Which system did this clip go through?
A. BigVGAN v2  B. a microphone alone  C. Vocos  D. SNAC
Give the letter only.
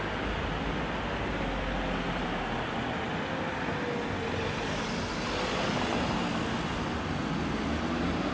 B